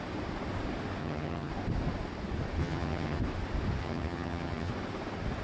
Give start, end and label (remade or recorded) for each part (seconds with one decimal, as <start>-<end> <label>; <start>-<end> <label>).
0.0-1.0 recorded; 1.0-1.5 remade; 1.5-2.6 recorded; 2.6-3.2 remade; 3.2-3.8 recorded; 3.8-4.7 remade; 4.7-5.4 recorded

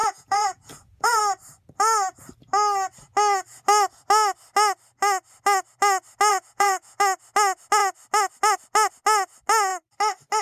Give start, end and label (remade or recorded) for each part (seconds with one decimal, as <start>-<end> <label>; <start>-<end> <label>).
0.0-1.2 remade; 1.2-6.3 recorded; 6.3-7.0 remade; 7.0-10.4 recorded

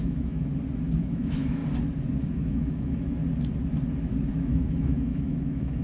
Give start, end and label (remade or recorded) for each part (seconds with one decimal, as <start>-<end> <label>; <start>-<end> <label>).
0.0-0.5 remade; 0.5-1.0 recorded; 1.0-1.6 remade; 1.6-2.2 recorded; 2.2-3.2 remade; 3.2-4.3 recorded; 4.3-5.8 remade

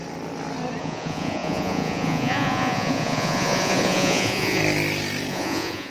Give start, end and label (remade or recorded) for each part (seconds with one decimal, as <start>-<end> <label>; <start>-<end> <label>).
0.0-0.8 recorded; 0.8-4.6 remade; 4.6-5.3 recorded; 5.3-5.9 remade

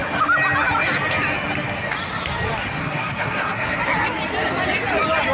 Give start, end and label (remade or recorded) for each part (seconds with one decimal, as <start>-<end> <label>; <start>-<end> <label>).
0.0-2.8 recorded; 2.8-3.8 remade; 3.8-5.3 recorded

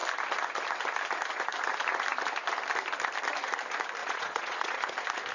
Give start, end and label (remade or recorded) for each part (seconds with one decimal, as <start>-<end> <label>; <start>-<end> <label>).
0.0-4.0 recorded; 4.0-4.8 remade; 4.8-5.3 recorded

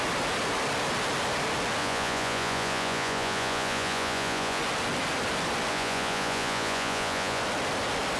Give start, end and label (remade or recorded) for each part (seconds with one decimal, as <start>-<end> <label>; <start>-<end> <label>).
0.0-1.8 recorded; 1.8-4.6 remade; 4.6-5.7 recorded; 5.7-7.4 remade; 7.4-8.2 recorded